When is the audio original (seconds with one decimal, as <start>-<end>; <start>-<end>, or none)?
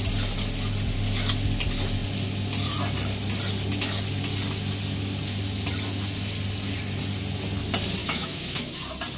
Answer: 0.0-8.0; 8.7-9.2